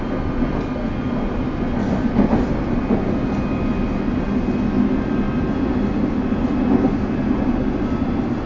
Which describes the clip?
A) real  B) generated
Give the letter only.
A